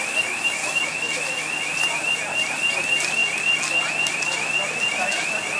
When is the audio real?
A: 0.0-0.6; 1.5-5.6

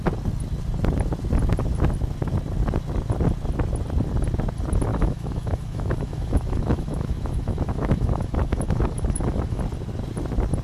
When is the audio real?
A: 0.0-4.9; 9.6-10.6

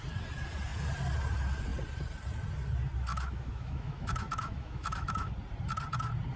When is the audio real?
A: 0.0-3.1; 5.3-6.4

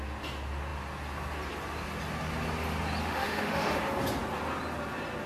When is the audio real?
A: 0.0-3.0; 3.8-5.3

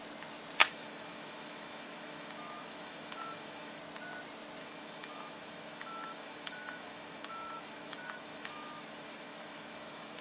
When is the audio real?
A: 0.0-0.6; 3.8-4.6

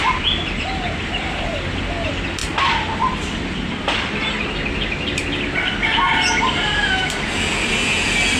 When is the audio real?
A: 0.0-8.4